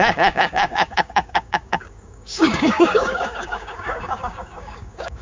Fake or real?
fake